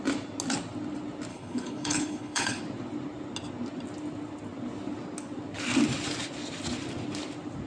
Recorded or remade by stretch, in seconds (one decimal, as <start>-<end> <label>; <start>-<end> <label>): 0.0-1.3 recorded; 1.3-2.6 remade; 2.6-7.7 recorded